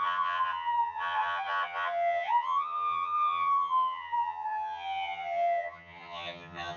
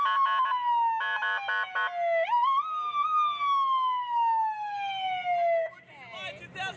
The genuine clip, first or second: second